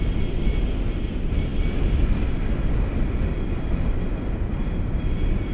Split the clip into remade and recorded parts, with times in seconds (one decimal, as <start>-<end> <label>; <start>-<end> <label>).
0.0-5.5 recorded